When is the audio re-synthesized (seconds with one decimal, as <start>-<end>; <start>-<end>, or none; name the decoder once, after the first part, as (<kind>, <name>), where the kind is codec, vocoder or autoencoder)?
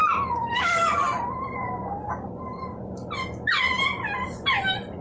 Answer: none